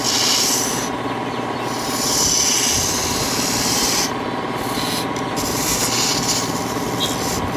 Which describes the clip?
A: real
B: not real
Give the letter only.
A